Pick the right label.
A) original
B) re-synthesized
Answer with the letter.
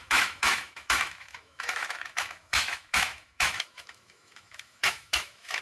B